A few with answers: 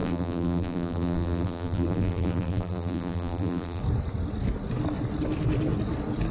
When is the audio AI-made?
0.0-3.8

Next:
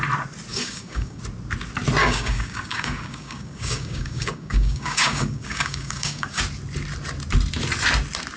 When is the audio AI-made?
0.5-1.2; 2.0-6.4

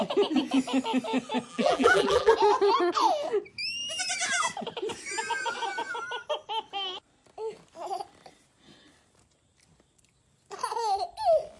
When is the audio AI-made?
1.5-2.3

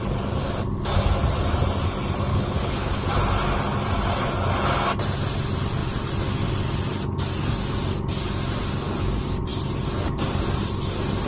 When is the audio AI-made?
2.3-3.1

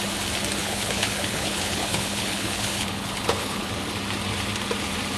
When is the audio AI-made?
0.6-3.7

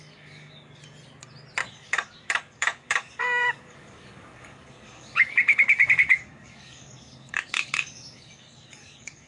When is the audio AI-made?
0.0-0.8; 1.7-9.3